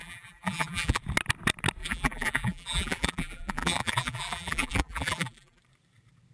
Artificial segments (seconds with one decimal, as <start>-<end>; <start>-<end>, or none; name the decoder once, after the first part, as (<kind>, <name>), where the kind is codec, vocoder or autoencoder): 0.0-1.0 (vocoder, BigVGAN v2); 1.8-5.6